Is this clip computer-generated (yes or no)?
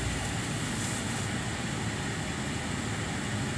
no